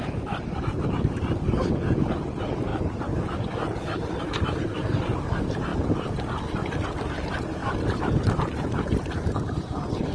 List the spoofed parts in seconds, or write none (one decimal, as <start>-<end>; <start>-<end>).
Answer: 0.0-5.7; 6.5-10.1